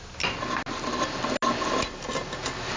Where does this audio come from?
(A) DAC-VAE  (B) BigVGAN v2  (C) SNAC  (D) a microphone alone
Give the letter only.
D